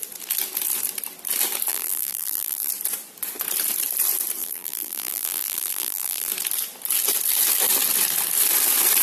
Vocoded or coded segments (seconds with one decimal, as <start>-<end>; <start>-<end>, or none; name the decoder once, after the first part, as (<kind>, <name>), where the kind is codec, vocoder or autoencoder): 1.7-2.7 (vocoder, BigVGAN v2); 4.4-6.3